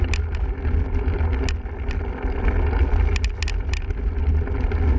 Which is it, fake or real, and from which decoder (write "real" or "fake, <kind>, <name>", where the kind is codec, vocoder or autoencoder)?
real